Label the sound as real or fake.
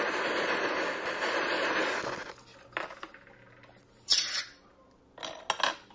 real